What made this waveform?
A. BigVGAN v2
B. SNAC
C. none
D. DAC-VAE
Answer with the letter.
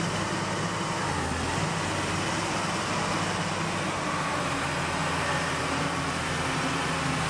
C